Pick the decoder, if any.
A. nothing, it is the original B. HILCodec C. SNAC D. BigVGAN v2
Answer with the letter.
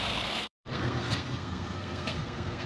C